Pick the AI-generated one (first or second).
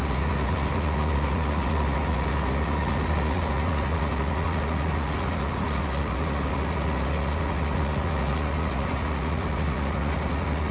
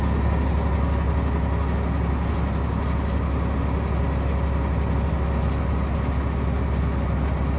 first